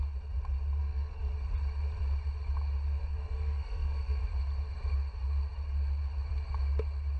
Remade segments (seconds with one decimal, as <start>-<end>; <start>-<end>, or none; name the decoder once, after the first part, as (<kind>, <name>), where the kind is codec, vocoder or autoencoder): 0.8-1.3 (codec, SNAC); 3.0-4.2